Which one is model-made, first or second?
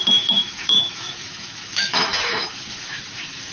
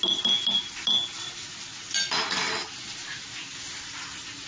first